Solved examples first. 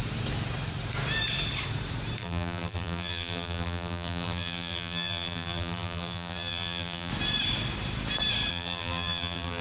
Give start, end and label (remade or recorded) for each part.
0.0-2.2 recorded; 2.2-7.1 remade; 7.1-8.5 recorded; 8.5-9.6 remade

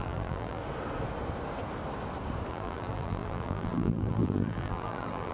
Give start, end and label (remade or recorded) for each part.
0.0-0.6 remade; 0.6-2.5 recorded; 2.5-5.3 remade

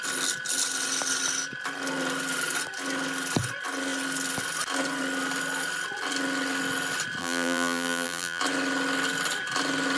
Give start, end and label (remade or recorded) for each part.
0.0-7.2 recorded; 7.2-8.4 remade; 8.4-10.0 recorded